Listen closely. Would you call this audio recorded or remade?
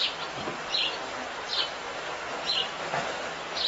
recorded